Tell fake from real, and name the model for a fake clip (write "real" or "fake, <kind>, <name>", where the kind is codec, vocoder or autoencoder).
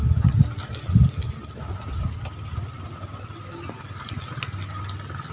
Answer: real